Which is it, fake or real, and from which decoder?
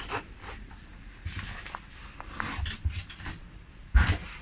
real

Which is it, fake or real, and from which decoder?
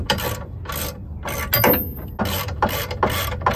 real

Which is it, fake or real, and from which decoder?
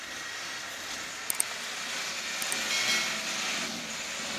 real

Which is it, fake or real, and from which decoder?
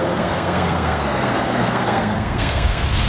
fake, codec, SNAC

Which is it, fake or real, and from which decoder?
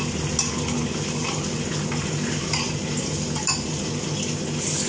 real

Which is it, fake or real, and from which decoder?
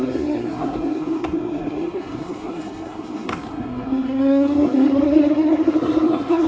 fake, codec, SNAC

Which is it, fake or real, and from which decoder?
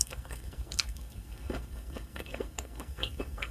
fake, codec, SNAC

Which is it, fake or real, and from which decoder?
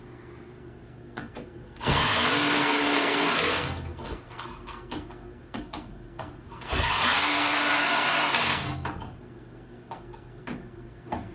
fake, codec, SNAC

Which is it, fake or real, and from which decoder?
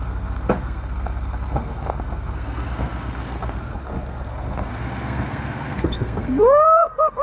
fake, codec, SNAC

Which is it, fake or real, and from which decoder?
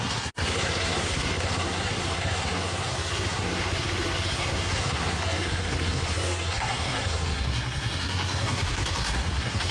fake, codec, SNAC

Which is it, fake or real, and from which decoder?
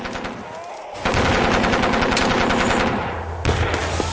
real